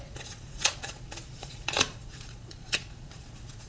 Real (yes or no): no